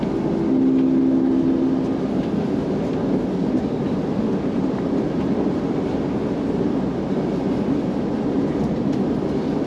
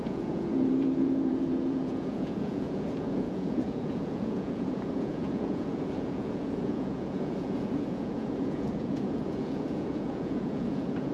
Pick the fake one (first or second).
second